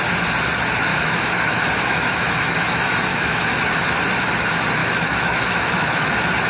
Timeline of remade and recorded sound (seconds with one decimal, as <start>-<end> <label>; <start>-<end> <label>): 0.0-0.9 recorded; 0.9-2.6 remade; 2.6-3.1 recorded; 3.1-4.0 remade; 4.0-4.8 recorded; 4.8-6.1 remade; 6.1-6.5 recorded